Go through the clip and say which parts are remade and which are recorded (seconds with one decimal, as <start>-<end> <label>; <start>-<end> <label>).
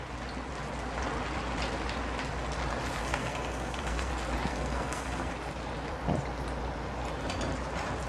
0.0-3.0 recorded; 3.0-4.1 remade; 4.1-4.5 recorded; 4.5-5.3 remade; 5.3-8.1 recorded